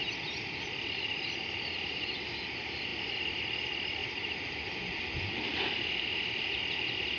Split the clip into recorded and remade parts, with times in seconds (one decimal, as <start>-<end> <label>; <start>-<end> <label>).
0.0-4.0 recorded; 4.0-5.1 remade; 5.1-7.2 recorded